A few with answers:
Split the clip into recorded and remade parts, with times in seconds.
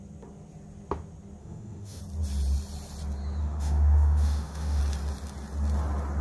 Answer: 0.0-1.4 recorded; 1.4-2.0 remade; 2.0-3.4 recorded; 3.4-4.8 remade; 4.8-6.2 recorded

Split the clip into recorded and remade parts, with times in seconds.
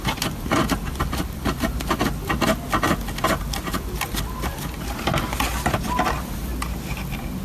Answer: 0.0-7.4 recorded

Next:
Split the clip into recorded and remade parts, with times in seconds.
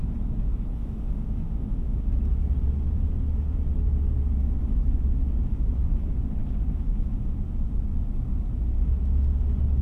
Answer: 0.0-0.8 recorded; 0.8-2.1 remade; 2.1-9.8 recorded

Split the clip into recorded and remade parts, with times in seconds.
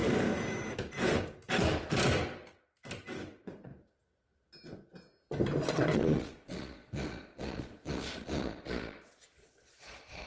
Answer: 0.0-3.3 recorded; 3.3-3.7 remade; 3.7-5.7 recorded; 5.7-10.3 remade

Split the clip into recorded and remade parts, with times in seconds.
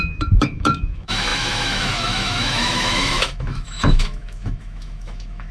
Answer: 0.0-5.5 remade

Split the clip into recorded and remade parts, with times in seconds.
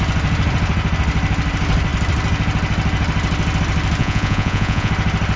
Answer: 0.0-4.0 recorded; 4.0-4.9 remade; 4.9-5.4 recorded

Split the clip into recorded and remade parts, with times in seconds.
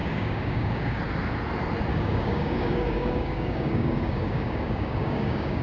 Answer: 0.0-1.0 remade; 1.0-1.9 recorded; 1.9-5.6 remade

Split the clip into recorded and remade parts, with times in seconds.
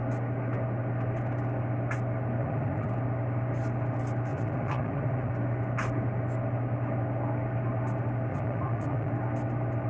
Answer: 0.0-2.4 recorded; 2.4-2.9 remade; 2.9-4.3 recorded; 4.3-5.3 remade; 5.3-8.3 recorded; 8.3-9.1 remade; 9.1-9.9 recorded